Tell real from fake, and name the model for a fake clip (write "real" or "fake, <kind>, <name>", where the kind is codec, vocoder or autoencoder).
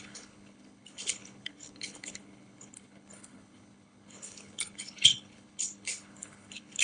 fake, codec, HILCodec